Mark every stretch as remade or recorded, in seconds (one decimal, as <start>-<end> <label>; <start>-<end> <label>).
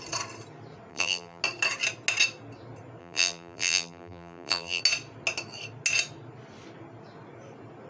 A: 0.0-0.9 recorded; 0.9-1.4 remade; 1.4-3.0 recorded; 3.0-4.8 remade; 4.8-7.9 recorded